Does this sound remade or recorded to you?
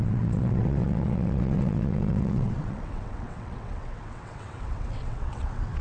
remade